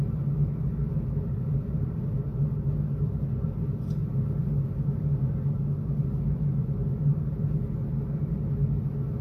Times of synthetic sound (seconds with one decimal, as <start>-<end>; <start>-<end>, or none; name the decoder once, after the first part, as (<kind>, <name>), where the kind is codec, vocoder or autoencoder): none